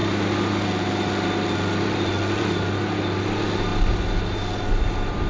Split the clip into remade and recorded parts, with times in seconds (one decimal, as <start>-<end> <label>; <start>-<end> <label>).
0.0-5.3 recorded